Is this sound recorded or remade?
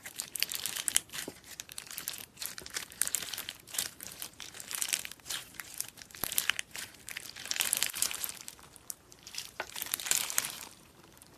remade